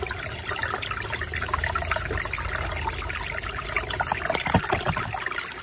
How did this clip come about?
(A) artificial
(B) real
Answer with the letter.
B